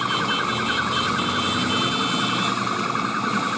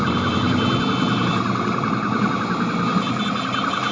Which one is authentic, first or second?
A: first